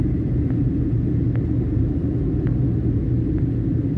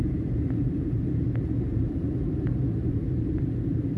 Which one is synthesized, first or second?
second